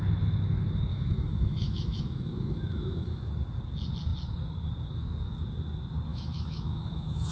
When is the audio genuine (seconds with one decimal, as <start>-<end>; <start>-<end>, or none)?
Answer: 0.0-0.9; 3.3-6.1